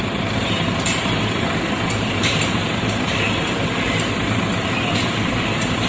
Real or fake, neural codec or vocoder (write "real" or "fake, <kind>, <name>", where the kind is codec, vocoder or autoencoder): fake, vocoder, BigVGAN v2